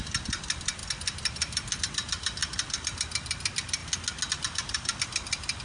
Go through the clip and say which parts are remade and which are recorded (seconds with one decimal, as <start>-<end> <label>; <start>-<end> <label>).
0.0-3.8 remade; 3.8-4.3 recorded; 4.3-5.6 remade